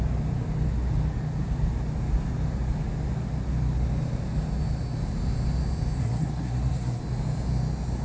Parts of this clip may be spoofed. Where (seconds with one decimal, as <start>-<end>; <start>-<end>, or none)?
6.0-7.0

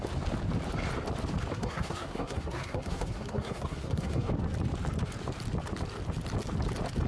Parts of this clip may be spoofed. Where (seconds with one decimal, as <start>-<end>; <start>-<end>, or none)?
1.5-4.3

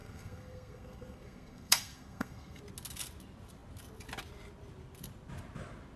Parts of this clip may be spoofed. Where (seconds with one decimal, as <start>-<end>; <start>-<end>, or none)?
0.0-2.6

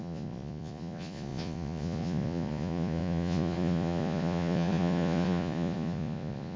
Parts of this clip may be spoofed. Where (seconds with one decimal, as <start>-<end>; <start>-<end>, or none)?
0.0-6.6

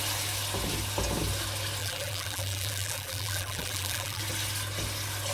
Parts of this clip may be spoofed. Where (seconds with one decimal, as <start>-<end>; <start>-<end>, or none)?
1.8-4.2